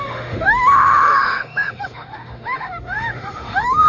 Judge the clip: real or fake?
fake